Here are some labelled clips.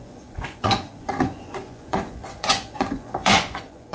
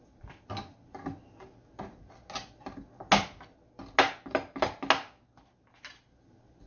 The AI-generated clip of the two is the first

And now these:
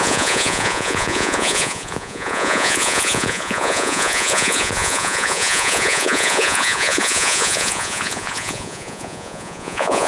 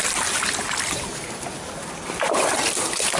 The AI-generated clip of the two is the first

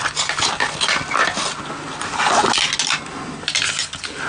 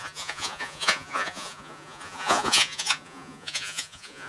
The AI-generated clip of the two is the second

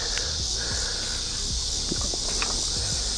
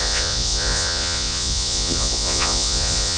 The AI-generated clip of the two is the second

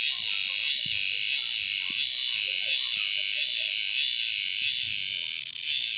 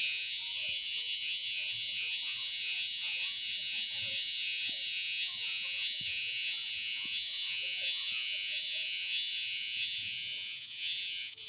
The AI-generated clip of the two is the second